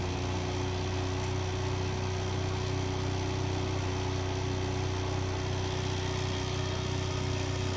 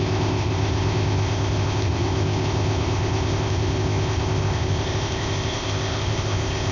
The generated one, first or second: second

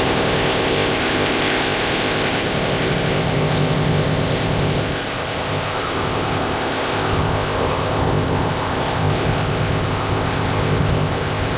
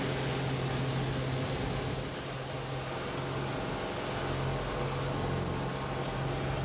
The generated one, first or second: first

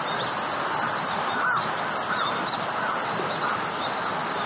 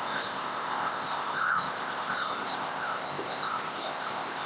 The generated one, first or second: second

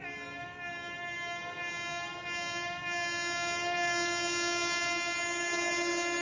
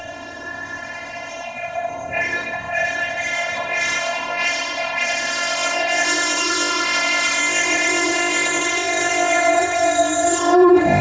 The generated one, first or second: second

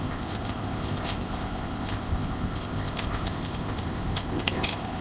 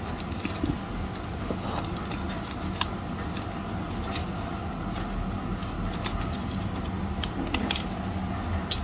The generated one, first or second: first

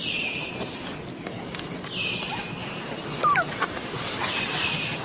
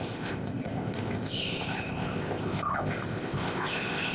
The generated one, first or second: second